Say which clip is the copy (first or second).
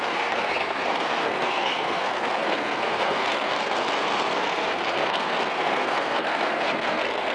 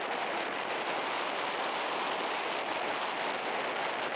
first